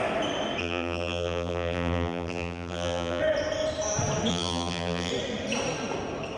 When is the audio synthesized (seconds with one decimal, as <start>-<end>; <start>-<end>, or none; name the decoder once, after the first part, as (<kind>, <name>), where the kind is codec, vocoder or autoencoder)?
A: 0.6-3.2 (vocoder, BigVGAN v2); 4.3-5.1